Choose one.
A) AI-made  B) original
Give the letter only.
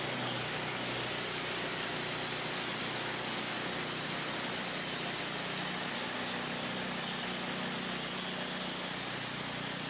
B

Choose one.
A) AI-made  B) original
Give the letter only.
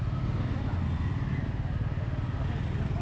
B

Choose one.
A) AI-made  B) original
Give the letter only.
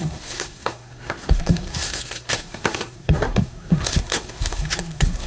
A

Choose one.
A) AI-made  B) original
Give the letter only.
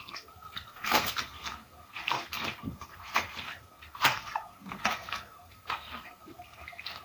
A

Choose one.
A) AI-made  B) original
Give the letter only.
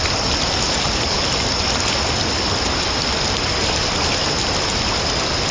B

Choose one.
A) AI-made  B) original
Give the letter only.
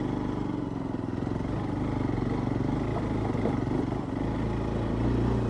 B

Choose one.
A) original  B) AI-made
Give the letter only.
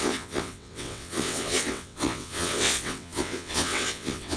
B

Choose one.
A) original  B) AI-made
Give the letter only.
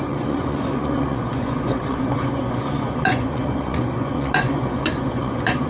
B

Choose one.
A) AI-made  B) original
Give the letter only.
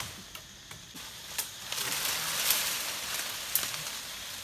B